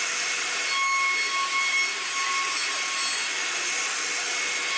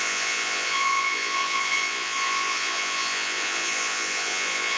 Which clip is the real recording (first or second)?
first